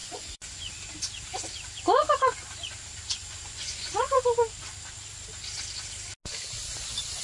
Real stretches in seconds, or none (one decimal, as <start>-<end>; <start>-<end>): 0.7-3.2; 4.2-7.2